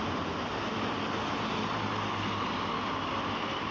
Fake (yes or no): no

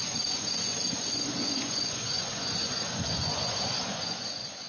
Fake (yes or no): yes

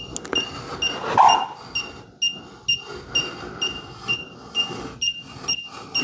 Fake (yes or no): no